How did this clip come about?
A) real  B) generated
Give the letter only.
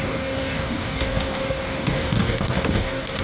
B